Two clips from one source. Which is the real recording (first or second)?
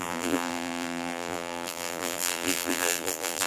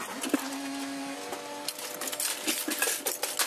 second